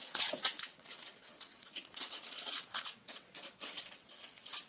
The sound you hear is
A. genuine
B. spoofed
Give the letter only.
B